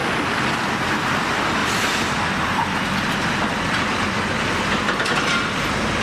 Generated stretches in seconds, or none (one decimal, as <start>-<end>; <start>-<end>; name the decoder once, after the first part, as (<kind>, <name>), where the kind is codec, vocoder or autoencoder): 1.6-5.2 (vocoder, BigVGAN v2)